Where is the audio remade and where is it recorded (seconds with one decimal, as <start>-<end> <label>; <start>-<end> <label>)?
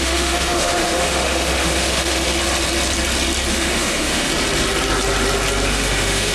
0.0-2.3 remade; 2.3-3.5 recorded; 3.5-4.3 remade; 4.3-5.7 recorded; 5.7-6.3 remade